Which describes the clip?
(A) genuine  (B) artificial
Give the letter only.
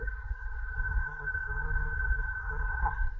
B